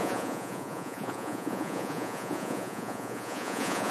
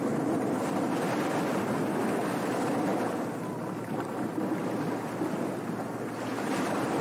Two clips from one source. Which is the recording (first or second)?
second